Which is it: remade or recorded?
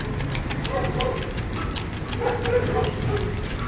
recorded